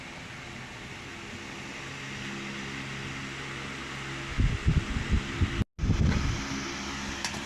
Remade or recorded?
recorded